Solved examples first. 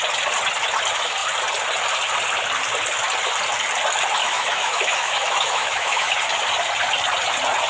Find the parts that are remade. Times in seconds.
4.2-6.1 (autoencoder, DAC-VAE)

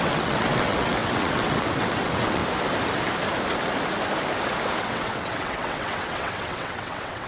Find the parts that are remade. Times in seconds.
0.0-2.4 (vocoder, WaveNeXt); 4.8-7.3